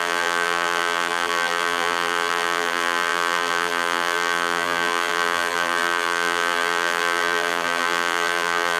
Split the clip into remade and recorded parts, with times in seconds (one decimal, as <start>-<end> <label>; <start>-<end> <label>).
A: 0.0-8.8 remade